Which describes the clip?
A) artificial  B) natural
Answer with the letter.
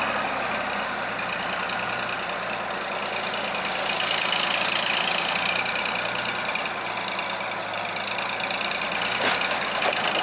B